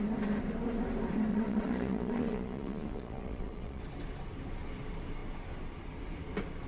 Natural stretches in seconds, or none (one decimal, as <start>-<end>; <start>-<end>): 0.0-1.3; 3.8-6.7